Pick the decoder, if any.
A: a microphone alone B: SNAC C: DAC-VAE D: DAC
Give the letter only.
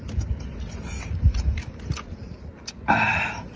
A